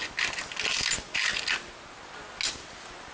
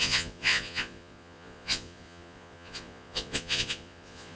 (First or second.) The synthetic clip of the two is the second